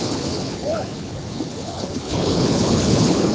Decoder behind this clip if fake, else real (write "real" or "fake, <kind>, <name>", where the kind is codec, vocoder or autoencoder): fake, codec, HILCodec